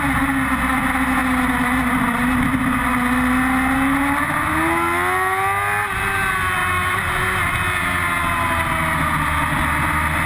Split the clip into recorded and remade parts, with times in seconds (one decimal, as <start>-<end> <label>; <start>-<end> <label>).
0.0-10.3 recorded